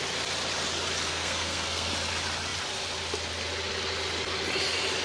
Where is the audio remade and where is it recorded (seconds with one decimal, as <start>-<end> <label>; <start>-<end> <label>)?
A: 0.0-1.1 recorded; 1.1-1.9 remade; 1.9-5.0 recorded